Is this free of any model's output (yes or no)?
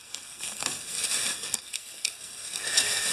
no